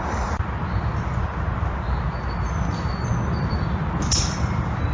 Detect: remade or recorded recorded